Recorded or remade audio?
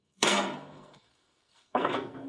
remade